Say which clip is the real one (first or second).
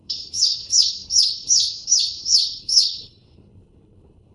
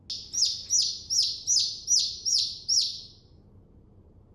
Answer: second